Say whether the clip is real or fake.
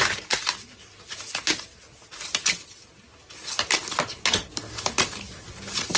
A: real